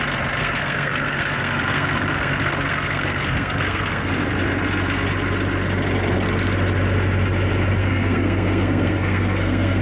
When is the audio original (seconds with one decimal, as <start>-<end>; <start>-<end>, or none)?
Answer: 0.0-0.4; 4.1-7.8